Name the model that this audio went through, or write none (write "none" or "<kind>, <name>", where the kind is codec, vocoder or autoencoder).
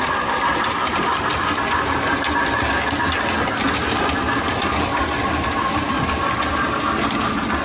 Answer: none